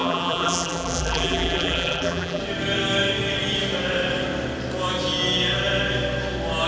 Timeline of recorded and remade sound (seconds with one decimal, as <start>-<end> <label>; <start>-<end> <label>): 0.0-2.4 remade; 2.4-6.7 recorded